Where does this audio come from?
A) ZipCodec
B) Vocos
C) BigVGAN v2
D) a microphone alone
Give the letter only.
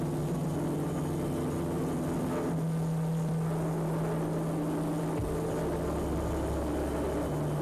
D